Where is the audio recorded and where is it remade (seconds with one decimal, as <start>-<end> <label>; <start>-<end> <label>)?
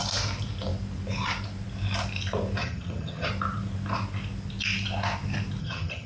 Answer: 0.0-2.6 recorded; 2.6-3.3 remade; 3.3-5.6 recorded; 5.6-6.1 remade